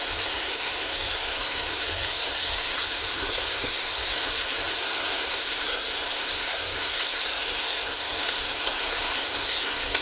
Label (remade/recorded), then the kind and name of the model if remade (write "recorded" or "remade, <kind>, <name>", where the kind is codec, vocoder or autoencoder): remade, codec, SNAC